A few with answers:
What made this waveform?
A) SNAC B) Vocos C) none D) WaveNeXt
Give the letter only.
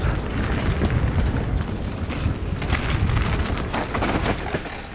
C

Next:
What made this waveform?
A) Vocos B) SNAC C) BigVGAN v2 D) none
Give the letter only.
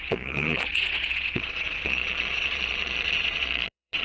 A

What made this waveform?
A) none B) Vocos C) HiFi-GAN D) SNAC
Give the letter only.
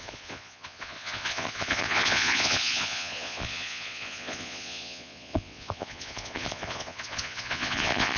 B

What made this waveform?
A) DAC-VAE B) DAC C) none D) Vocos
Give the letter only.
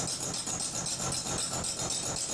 C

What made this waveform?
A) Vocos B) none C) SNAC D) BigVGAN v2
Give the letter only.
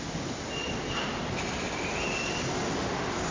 B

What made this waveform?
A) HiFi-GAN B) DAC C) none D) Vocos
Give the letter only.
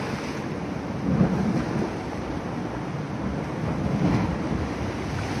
C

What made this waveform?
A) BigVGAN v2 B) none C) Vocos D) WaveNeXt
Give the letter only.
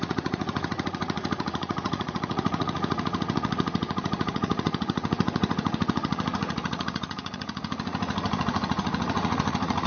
C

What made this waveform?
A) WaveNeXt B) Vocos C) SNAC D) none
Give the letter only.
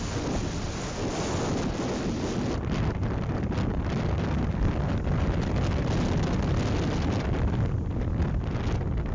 D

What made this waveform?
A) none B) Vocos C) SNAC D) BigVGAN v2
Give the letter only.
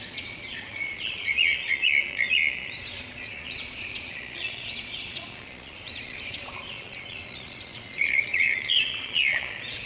B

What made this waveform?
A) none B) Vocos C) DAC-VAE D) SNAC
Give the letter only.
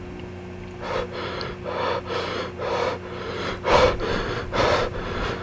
A